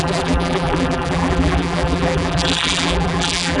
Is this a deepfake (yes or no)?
yes